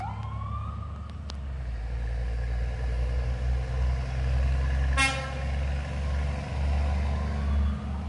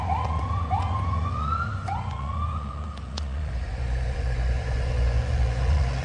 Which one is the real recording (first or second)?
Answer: first